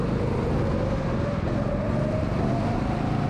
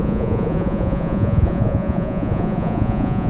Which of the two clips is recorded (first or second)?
first